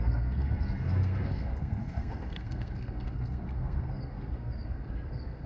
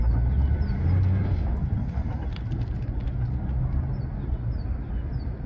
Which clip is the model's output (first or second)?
first